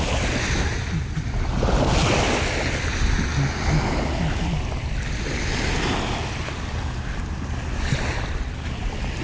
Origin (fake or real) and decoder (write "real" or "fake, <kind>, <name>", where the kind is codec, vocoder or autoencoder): real